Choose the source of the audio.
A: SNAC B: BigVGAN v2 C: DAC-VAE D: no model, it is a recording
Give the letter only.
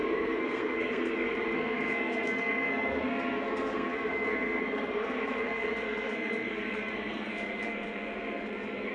A